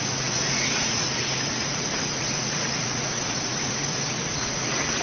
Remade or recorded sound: remade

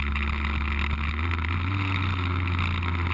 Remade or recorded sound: recorded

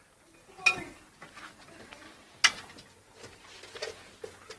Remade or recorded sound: recorded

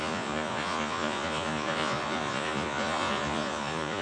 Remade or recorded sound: remade